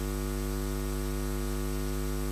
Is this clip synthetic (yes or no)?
no